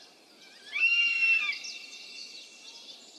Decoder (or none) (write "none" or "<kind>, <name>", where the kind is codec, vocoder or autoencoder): none